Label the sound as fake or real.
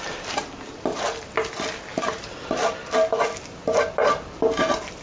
real